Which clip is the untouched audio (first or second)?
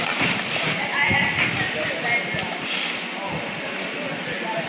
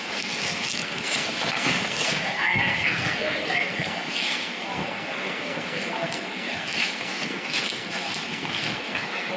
first